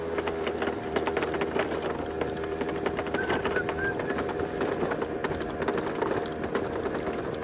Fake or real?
real